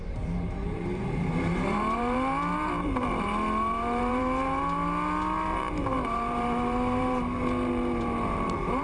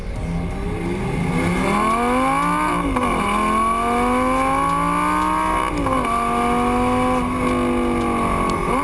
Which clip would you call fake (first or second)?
first